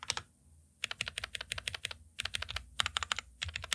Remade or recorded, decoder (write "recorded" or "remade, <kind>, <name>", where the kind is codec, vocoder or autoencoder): recorded